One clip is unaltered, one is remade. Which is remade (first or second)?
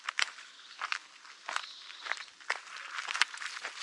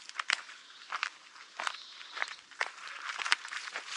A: second